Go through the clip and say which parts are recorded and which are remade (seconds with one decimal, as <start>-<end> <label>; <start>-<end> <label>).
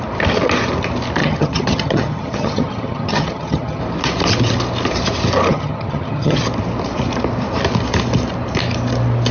0.0-1.2 recorded; 1.2-3.8 remade; 3.8-5.5 recorded; 5.5-6.4 remade; 6.4-9.3 recorded